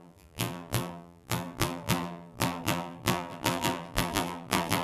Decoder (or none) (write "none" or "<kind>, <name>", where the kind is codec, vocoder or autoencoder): vocoder, BigVGAN v2